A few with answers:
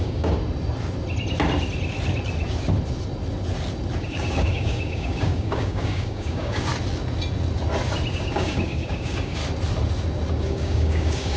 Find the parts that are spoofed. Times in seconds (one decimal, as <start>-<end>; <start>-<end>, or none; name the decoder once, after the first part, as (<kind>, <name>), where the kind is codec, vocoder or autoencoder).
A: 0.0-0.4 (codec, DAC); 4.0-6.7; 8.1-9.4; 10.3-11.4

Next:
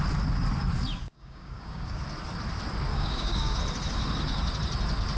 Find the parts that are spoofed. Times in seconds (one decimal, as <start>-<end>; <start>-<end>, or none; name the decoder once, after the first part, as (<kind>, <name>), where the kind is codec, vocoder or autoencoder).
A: 1.0-2.0 (codec, DAC); 2.9-3.6

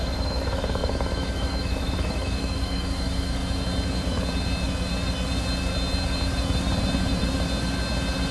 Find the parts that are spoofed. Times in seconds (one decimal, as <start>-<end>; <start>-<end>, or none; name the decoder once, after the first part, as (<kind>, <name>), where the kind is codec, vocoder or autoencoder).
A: 0.0-3.4 (autoencoder, DAC-VAE)

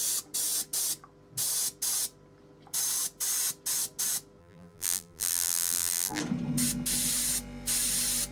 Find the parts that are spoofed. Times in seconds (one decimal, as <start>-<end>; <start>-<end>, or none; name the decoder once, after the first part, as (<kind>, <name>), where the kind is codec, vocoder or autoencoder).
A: 4.4-6.2 (vocoder, BigVGAN v2)

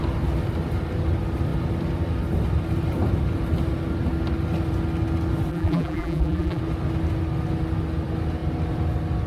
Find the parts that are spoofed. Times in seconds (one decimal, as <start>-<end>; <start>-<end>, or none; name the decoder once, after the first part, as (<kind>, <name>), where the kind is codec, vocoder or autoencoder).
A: 5.5-6.6 (vocoder, BigVGAN v2)

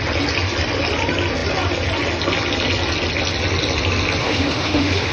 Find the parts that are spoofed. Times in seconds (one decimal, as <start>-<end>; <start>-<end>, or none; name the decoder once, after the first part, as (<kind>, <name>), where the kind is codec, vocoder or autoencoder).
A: 4.2-5.1 (autoencoder, DAC-VAE)

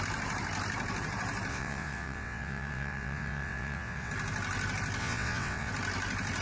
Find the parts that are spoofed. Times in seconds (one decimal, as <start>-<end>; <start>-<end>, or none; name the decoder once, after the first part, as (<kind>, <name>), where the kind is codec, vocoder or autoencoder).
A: 1.5-4.1 (vocoder, WaveNeXt); 5.0-5.7